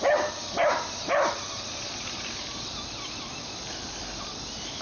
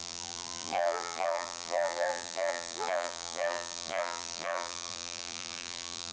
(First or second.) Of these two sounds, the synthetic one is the second